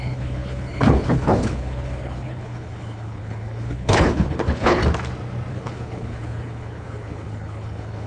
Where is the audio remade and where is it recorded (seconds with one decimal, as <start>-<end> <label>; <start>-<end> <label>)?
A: 0.0-4.8 remade; 4.8-5.5 recorded; 5.5-8.1 remade